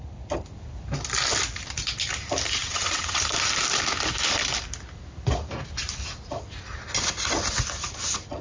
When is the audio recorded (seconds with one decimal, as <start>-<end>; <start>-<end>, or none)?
0.0-2.6; 3.2-8.4